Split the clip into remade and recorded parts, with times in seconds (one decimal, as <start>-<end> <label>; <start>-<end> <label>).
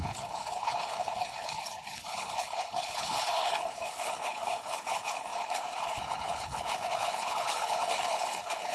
0.0-8.7 remade